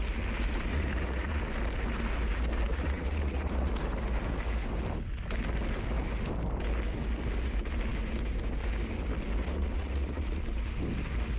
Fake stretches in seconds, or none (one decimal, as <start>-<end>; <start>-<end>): 0.7-1.4; 2.7-3.7; 9.4-10.4